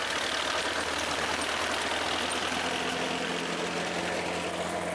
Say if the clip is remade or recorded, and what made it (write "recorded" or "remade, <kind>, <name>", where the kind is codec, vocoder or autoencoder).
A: recorded